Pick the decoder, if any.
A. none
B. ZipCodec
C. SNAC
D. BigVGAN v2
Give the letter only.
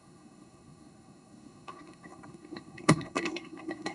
C